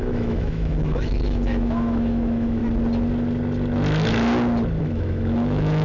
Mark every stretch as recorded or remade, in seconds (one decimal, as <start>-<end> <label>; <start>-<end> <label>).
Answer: 0.0-2.6 remade; 2.6-4.8 recorded; 4.8-5.8 remade